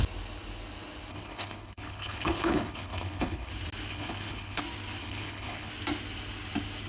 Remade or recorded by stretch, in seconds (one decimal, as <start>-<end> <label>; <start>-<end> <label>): 0.0-1.1 recorded; 1.1-3.5 remade; 3.5-3.9 recorded; 3.9-4.6 remade; 4.6-5.0 recorded; 5.0-5.7 remade; 5.7-6.9 recorded